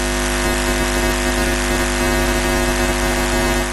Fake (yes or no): no